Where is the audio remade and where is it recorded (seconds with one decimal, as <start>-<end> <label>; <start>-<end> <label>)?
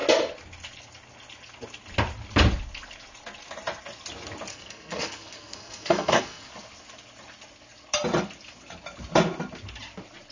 0.0-4.5 recorded; 4.5-6.5 remade; 6.5-10.3 recorded